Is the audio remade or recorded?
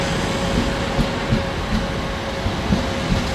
recorded